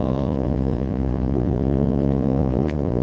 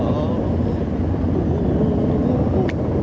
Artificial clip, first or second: first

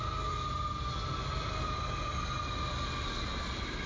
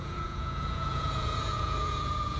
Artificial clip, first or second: second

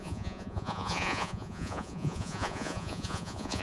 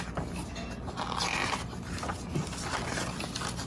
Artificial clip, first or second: first